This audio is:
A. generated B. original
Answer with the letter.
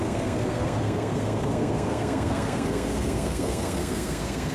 A